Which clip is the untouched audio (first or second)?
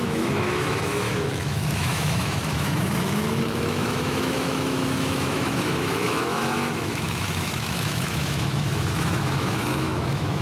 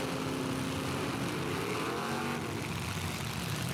second